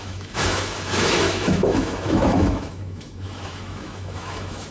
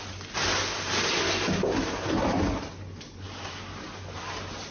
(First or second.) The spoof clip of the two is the first